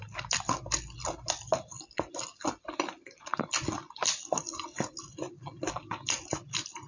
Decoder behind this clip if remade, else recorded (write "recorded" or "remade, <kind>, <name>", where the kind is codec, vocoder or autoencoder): recorded